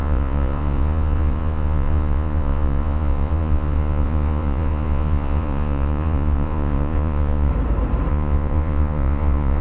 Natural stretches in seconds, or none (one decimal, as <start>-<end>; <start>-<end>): 7.5-8.1